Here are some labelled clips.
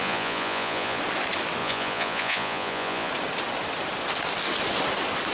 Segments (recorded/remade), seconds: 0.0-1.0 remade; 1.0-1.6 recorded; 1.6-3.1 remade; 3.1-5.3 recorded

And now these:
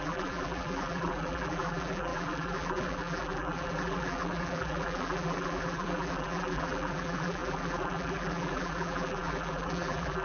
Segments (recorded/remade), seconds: 0.0-10.2 remade

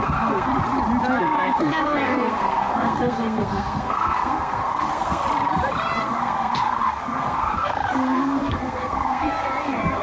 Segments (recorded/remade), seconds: 0.0-0.5 remade; 0.5-1.2 recorded; 1.2-5.2 remade; 5.2-6.0 recorded; 6.0-10.0 remade

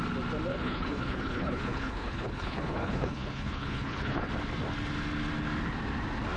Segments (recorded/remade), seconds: 0.0-0.5 recorded; 0.5-4.3 remade; 4.3-6.4 recorded

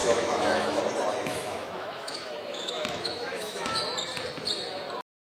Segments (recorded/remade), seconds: 0.0-0.8 remade; 0.8-1.3 recorded; 1.3-3.8 remade; 3.8-5.3 recorded

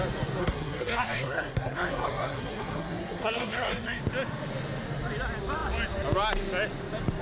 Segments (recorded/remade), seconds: 0.0-0.4 recorded; 0.4-4.0 remade; 4.0-7.2 recorded

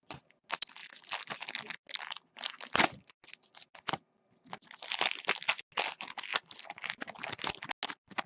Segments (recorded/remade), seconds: 0.0-8.3 recorded